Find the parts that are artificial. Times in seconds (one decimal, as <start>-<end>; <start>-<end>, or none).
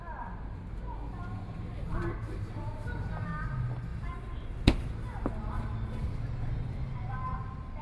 3.9-4.9